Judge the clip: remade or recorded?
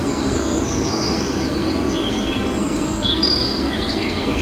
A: remade